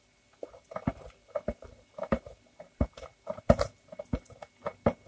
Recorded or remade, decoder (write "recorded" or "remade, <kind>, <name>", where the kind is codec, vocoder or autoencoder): recorded